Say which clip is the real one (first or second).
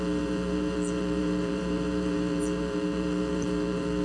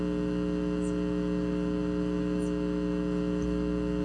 second